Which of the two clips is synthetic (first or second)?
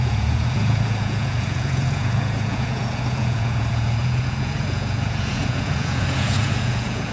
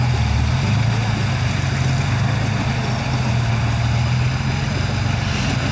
first